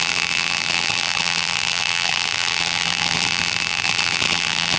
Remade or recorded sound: remade